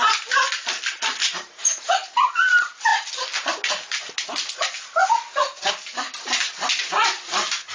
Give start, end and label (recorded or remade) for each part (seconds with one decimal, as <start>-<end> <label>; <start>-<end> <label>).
0.0-1.2 recorded; 1.2-1.9 remade; 1.9-7.7 recorded